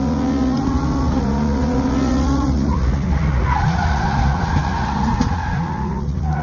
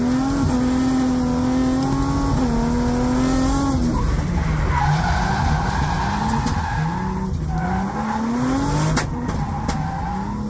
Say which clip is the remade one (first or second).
first